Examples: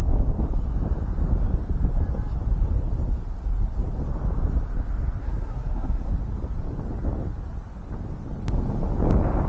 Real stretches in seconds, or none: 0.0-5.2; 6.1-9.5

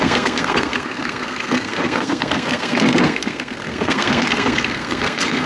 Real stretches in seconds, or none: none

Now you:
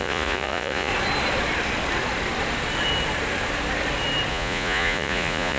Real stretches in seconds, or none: 0.9-4.3

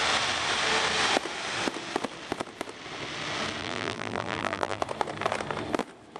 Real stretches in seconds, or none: 0.0-3.6; 4.8-6.2